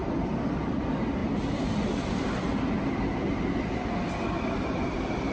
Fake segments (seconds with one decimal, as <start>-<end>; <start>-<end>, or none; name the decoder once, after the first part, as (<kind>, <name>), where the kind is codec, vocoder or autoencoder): 0.0-1.2 (vocoder, BigVGAN v2); 4.4-5.3